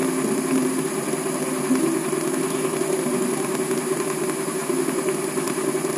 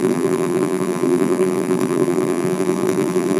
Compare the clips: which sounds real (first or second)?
first